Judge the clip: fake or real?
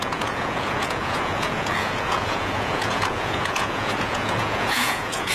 fake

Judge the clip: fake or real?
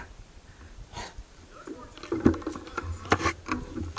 real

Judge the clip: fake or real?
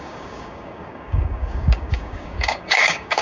fake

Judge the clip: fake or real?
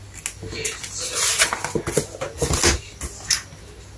real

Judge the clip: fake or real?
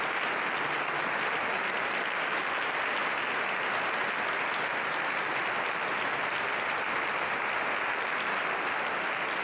real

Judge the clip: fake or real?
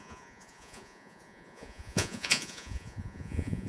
fake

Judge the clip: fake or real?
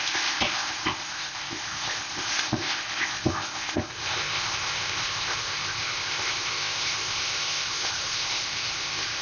fake